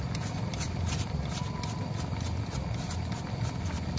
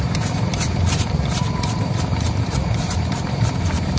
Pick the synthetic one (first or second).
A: second